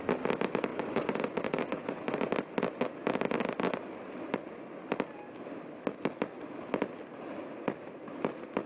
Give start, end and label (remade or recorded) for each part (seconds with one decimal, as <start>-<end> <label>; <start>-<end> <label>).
0.0-0.7 recorded; 0.7-2.3 remade; 2.3-8.7 recorded